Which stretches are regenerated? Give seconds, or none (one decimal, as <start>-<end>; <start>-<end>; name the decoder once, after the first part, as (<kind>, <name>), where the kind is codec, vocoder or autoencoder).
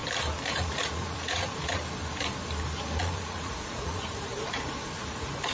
0.5-1.8 (vocoder, Vocos); 3.0-5.5